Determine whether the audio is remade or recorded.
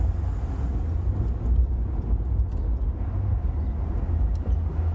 recorded